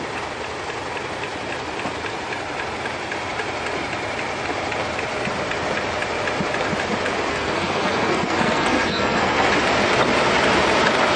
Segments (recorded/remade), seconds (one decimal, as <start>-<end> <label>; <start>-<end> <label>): 0.0-7.3 recorded; 7.3-9.5 remade; 9.5-11.2 recorded